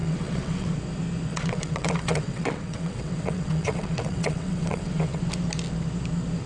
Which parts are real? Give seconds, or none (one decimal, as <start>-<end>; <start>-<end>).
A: 0.7-1.3; 5.2-6.5